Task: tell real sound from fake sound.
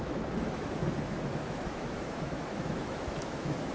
fake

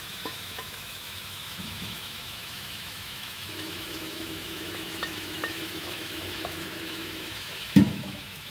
fake